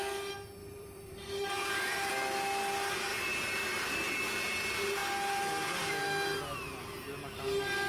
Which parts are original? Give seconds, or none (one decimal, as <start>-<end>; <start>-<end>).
0.0-0.6; 2.1-3.1; 4.2-7.9